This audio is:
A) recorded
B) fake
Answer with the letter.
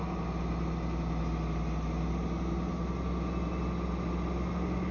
A